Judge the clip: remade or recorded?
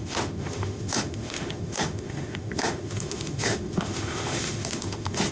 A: remade